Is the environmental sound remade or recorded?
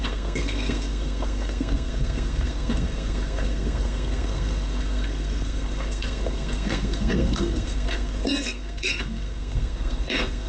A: remade